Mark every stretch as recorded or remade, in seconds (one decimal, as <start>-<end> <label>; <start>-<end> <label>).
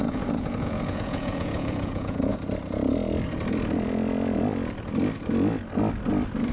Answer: 0.0-2.3 remade; 2.3-6.5 recorded